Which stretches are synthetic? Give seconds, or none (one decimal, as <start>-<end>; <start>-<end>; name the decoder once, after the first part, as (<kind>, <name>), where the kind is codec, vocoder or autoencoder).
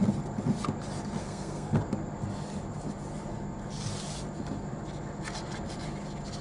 1.2-1.8 (codec, SNAC)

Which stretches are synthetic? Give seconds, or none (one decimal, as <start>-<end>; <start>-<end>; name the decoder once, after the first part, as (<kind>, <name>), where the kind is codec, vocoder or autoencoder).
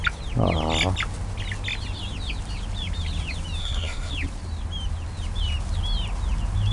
3.6-4.1 (codec, SNAC)